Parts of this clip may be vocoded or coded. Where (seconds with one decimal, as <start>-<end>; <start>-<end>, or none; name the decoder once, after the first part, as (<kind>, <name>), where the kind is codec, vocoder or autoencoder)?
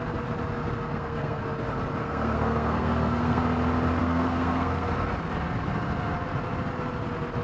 0.9-1.4 (codec, SNAC); 2.0-3.4; 4.0-4.9